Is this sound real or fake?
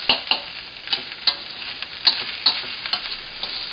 real